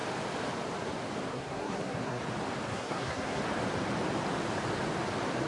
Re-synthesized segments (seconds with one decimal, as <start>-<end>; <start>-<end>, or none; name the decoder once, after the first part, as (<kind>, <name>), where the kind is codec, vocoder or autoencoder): 1.3-2.2 (codec, SNAC); 2.7-3.4

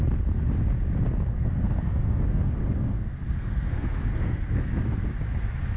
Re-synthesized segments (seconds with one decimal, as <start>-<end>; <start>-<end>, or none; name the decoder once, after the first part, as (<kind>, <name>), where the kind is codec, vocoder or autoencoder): 1.3-4.8 (codec, SNAC)

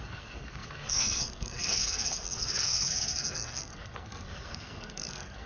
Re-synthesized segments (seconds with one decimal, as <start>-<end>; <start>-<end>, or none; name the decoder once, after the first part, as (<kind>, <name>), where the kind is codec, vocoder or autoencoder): 0.0-5.5 (codec, SNAC)

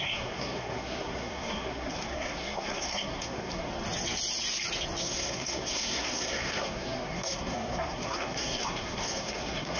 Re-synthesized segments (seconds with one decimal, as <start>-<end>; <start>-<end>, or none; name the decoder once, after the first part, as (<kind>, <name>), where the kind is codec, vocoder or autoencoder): 0.0-3.7 (codec, SNAC); 5.0-9.8

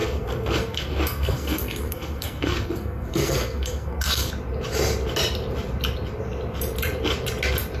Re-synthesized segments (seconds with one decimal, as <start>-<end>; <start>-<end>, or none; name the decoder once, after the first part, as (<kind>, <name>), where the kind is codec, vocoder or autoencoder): 0.0-4.3 (codec, SNAC)

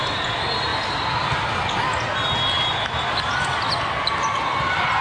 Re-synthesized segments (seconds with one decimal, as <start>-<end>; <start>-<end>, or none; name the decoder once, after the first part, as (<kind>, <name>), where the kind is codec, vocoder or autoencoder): none